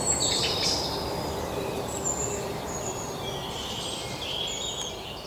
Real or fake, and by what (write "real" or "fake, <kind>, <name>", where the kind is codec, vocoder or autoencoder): real